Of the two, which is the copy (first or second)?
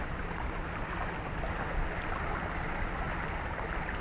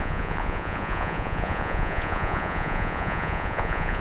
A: second